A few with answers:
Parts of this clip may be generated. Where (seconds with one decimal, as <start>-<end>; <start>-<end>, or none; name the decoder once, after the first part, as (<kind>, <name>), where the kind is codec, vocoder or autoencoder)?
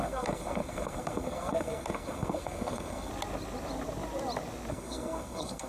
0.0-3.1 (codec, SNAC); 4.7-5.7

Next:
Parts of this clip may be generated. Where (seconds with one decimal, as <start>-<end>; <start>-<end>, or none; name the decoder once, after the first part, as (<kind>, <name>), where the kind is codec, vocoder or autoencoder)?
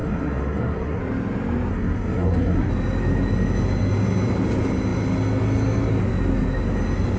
0.0-1.0 (codec, SNAC); 1.7-2.7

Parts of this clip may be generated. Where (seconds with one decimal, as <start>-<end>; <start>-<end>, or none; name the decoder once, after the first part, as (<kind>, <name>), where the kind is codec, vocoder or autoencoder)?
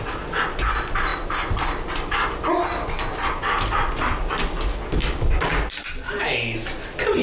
none